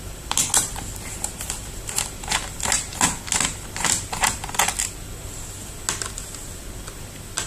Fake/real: real